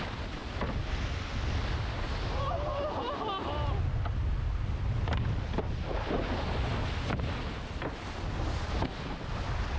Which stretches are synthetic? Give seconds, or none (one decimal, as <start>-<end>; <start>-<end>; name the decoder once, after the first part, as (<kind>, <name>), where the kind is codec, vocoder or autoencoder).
none